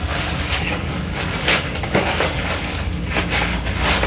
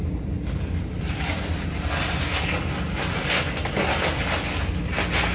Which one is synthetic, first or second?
first